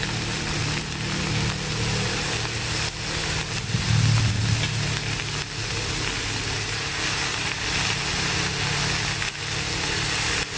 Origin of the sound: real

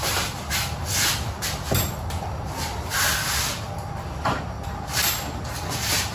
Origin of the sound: real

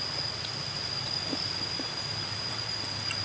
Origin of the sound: real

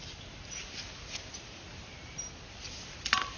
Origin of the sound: real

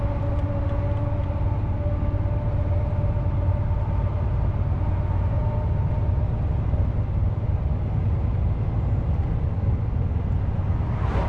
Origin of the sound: real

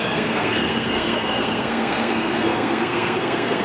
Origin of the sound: fake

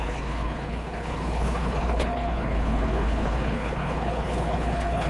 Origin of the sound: fake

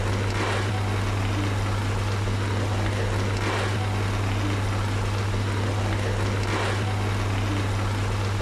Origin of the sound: real